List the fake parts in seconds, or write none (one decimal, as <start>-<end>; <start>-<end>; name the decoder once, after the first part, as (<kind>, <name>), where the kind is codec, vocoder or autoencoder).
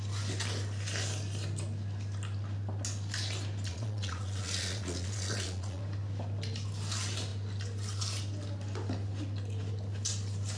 3.7-5.8 (vocoder, Vocos)